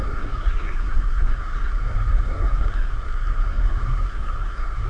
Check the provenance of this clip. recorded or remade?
remade